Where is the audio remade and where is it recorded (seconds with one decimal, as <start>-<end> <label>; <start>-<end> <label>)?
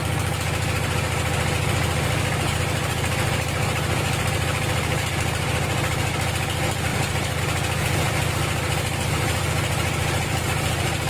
0.0-6.9 recorded; 6.9-7.4 remade; 7.4-11.1 recorded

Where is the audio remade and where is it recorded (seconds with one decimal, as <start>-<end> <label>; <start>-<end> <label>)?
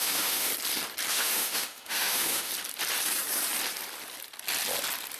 0.0-0.5 remade; 0.5-1.1 recorded; 1.1-2.5 remade; 2.5-5.2 recorded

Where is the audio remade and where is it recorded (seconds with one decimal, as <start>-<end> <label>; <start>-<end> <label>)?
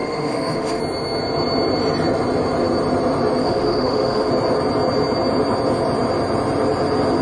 0.0-0.8 remade; 0.8-3.4 recorded; 3.4-4.3 remade; 4.3-7.2 recorded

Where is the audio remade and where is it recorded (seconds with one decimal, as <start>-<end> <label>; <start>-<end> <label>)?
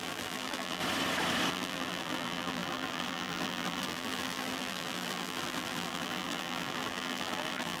0.0-0.8 remade; 0.8-1.5 recorded; 1.5-7.8 remade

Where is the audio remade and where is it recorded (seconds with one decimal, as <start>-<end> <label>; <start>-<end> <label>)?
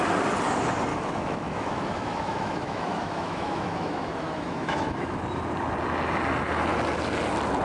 0.0-0.9 recorded; 0.9-5.2 remade; 5.2-7.6 recorded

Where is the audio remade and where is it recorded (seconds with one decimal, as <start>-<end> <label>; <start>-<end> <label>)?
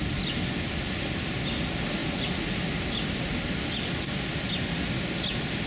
0.0-5.7 recorded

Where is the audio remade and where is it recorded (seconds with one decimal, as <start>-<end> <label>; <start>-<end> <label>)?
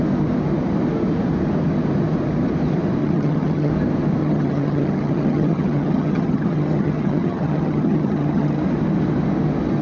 0.0-3.0 recorded; 3.0-3.7 remade; 3.7-4.2 recorded; 4.2-8.6 remade; 8.6-9.8 recorded